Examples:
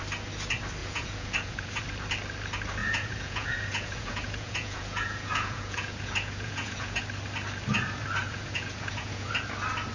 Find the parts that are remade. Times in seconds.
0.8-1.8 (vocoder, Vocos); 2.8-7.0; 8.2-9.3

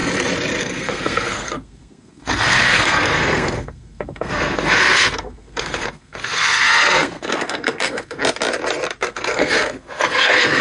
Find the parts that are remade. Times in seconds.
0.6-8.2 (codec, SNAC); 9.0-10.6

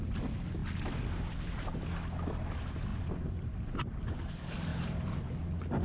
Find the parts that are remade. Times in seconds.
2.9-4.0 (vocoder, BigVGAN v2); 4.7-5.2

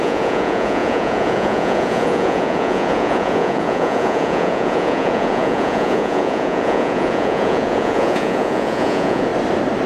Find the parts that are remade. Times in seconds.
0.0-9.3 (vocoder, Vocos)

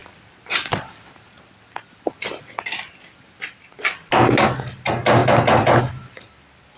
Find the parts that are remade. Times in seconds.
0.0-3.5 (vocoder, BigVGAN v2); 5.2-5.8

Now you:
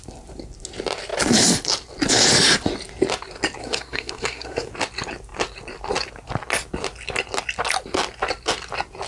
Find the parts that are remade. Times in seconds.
3.6-4.7 (codec, SNAC)

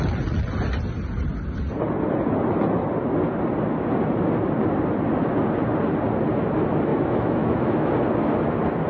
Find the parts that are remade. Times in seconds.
6.9-7.9 (autoencoder, DAC-VAE)

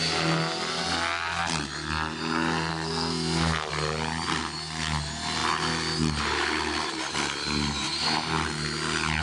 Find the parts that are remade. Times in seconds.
2.7-3.7 (codec, SNAC)